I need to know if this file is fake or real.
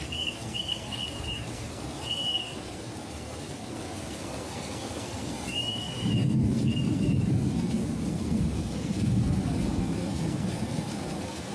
fake